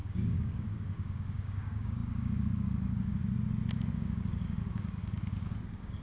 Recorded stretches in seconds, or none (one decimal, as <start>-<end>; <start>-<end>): 3.2-3.9